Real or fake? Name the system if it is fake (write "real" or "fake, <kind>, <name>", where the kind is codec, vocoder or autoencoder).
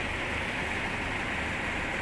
real